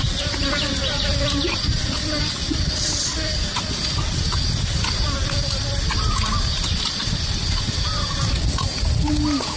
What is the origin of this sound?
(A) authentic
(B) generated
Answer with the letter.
A